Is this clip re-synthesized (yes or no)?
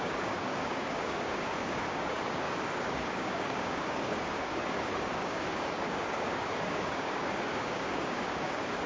yes